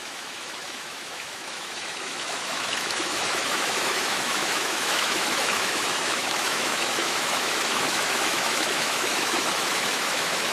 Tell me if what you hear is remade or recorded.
remade